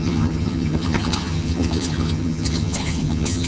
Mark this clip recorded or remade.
remade